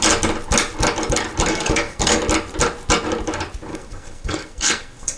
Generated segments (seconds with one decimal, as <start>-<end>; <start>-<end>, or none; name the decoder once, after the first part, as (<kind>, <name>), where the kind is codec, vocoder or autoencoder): 1.5-2.2 (codec, SNAC); 3.7-5.2

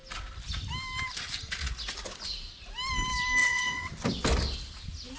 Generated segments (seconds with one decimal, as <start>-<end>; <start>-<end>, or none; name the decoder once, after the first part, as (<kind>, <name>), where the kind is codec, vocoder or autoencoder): 3.4-3.9 (vocoder, WaveNeXt)